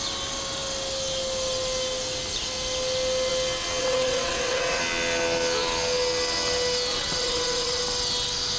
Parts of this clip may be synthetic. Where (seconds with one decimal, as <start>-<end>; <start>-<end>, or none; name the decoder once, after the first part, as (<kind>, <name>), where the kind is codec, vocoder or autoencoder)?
3.8-4.8 (vocoder, WaveNeXt); 6.9-7.8